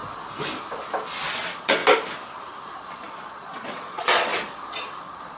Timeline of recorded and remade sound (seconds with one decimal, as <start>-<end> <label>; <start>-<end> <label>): 0.0-1.3 recorded; 1.3-1.8 remade; 1.8-2.8 recorded; 2.8-4.3 remade; 4.3-5.0 recorded; 5.0-5.4 remade